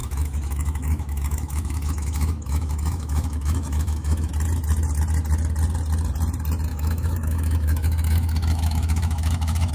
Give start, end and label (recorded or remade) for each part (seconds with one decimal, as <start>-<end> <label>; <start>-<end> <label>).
0.0-4.3 remade; 4.3-6.7 recorded; 6.7-9.7 remade